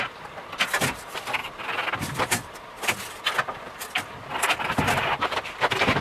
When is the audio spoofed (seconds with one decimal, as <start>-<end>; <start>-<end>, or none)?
none